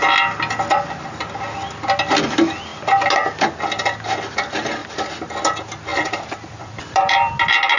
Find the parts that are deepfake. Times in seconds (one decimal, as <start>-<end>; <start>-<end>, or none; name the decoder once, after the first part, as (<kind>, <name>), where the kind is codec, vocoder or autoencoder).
4.8-5.4 (vocoder, BigVGAN v2); 5.9-7.3